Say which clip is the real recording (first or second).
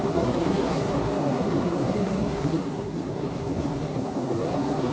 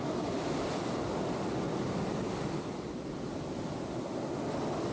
second